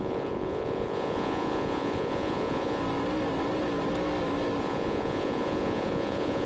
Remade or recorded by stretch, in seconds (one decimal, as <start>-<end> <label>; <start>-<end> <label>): 0.0-2.8 remade; 2.8-4.6 recorded; 4.6-6.5 remade